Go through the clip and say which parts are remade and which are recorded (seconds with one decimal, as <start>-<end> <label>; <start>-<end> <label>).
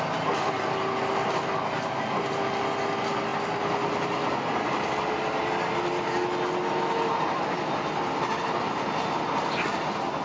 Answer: 0.0-10.2 recorded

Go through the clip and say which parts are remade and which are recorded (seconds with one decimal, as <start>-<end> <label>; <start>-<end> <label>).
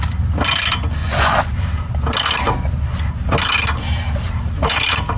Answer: 0.0-1.0 recorded; 1.0-1.5 remade; 1.5-5.2 recorded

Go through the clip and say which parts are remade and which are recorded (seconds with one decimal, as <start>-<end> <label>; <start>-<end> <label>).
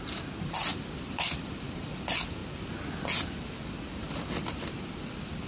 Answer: 0.0-2.4 remade; 2.4-4.8 recorded; 4.8-5.5 remade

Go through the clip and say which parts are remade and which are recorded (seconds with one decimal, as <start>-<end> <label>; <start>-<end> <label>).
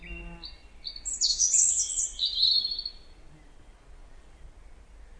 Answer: 0.0-1.3 recorded; 1.3-2.0 remade; 2.0-5.2 recorded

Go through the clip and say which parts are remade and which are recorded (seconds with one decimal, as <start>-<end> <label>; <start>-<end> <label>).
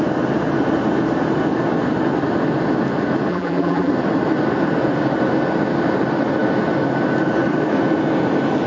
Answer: 0.0-3.3 recorded; 3.3-3.9 remade; 3.9-8.7 recorded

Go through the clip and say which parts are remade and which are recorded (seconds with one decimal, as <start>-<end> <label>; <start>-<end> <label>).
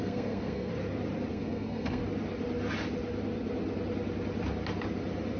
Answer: 0.0-0.7 remade; 0.7-1.3 recorded; 1.3-2.0 remade; 2.0-5.4 recorded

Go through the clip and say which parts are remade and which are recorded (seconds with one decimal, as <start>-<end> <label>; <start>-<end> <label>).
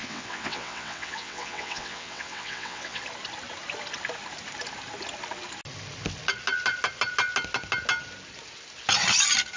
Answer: 0.0-3.0 remade; 3.0-9.6 recorded